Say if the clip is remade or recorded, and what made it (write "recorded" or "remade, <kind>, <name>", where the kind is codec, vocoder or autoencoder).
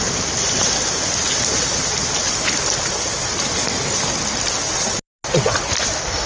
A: recorded